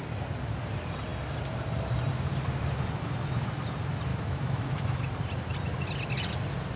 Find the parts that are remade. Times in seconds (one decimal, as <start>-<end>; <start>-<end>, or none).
4.1-5.0